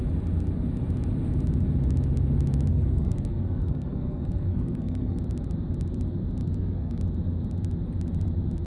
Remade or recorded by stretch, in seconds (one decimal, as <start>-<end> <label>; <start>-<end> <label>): 0.0-2.7 recorded; 2.7-5.2 remade; 5.2-6.4 recorded; 6.4-7.0 remade; 7.0-8.7 recorded